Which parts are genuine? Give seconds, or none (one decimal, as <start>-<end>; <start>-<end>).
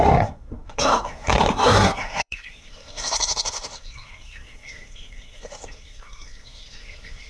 none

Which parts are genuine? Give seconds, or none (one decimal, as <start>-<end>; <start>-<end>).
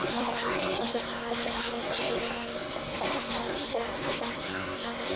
none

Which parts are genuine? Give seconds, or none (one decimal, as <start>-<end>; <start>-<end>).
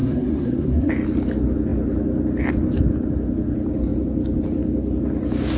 0.9-5.6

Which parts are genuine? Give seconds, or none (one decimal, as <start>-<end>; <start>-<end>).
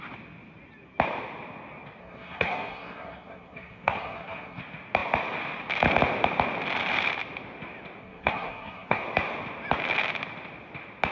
0.0-2.0; 4.6-8.0; 9.0-11.1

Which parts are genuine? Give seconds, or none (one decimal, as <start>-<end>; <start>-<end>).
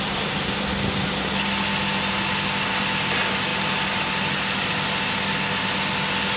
0.0-6.4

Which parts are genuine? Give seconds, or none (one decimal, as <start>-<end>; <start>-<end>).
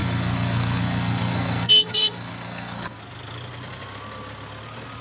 3.0-5.0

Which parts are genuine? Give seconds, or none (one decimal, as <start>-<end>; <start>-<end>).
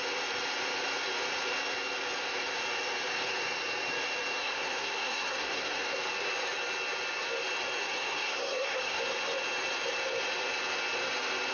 0.0-4.4; 5.8-7.8; 9.0-11.5